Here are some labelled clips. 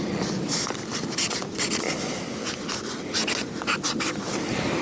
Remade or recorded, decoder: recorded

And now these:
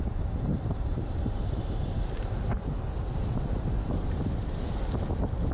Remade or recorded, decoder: remade, vocoder, BigVGAN v2